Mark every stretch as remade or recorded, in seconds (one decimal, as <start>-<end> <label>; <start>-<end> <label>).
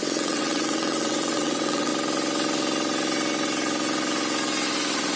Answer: 0.0-1.9 remade; 1.9-5.2 recorded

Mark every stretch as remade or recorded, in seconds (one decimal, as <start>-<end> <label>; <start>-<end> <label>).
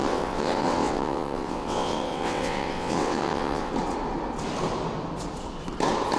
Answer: 0.0-3.7 remade; 3.7-6.2 recorded